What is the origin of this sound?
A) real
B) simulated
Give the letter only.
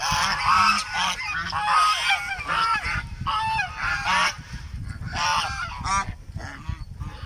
A